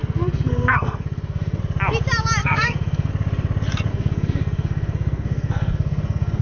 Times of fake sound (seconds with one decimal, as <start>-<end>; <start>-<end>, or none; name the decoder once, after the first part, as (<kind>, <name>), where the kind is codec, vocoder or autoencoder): 0.0-1.6 (codec, SNAC); 2.4-3.1; 3.9-6.4